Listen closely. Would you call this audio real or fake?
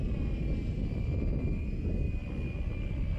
real